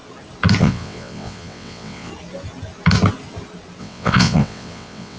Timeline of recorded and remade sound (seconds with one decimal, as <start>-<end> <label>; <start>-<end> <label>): 0.0-0.6 recorded; 0.6-2.1 remade; 2.1-3.8 recorded; 3.8-5.2 remade